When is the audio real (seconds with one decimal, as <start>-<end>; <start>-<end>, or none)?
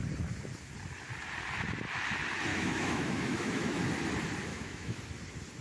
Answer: 0.0-2.5; 3.8-4.5; 5.0-5.6